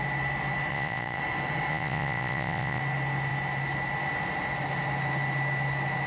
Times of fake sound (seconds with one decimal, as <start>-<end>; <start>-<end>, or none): 0.7-1.2; 1.7-2.8